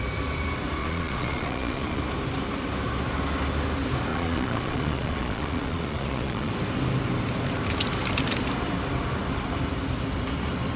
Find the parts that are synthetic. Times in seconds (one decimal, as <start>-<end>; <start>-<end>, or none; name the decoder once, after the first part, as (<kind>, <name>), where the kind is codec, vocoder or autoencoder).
0.8-2.0 (vocoder, Vocos); 4.1-6.5